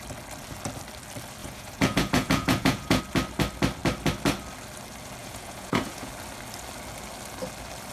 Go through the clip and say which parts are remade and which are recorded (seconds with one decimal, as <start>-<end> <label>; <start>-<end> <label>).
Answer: 0.0-1.4 recorded; 1.4-3.0 remade; 3.0-5.2 recorded; 5.2-6.1 remade; 6.1-7.9 recorded